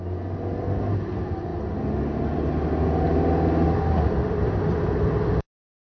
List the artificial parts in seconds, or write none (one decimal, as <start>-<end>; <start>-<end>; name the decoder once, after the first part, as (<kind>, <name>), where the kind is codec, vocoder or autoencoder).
none